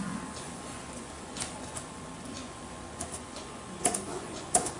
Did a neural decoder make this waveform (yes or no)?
yes